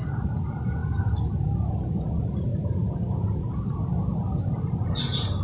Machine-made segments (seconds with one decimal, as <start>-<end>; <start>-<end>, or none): none